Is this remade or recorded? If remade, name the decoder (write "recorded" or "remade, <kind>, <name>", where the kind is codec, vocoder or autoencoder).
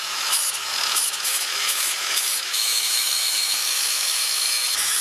remade, autoencoder, DAC-VAE